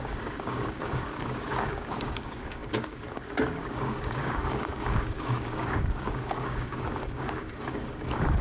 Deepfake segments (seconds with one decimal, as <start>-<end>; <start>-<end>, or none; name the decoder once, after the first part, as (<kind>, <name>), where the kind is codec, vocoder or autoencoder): 0.0-8.4 (codec, DAC)